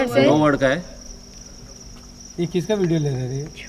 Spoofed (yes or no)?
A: no